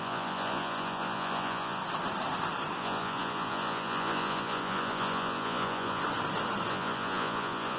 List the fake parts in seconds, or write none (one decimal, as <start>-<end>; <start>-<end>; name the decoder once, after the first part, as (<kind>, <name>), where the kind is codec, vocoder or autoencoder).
0.0-1.8 (vocoder, Vocos); 2.8-6.0; 6.7-7.8